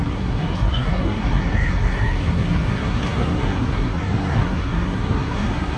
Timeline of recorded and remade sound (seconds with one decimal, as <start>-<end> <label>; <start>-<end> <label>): 0.0-5.8 remade